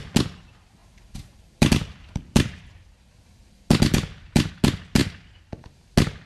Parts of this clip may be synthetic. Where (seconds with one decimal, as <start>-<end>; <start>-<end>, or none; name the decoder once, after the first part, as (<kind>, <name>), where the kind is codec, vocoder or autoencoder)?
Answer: 0.8-4.5 (vocoder, BigVGAN v2); 5.0-5.5